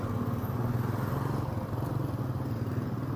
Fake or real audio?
real